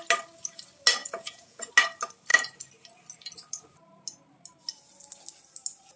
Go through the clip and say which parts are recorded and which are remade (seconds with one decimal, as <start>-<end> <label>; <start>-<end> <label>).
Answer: 0.0-1.0 recorded; 1.0-1.7 remade; 1.7-6.0 recorded